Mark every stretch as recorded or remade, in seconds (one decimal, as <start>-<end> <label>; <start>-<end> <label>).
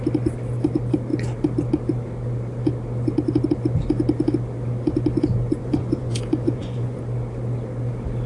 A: 0.0-5.6 recorded; 5.6-7.0 remade; 7.0-8.3 recorded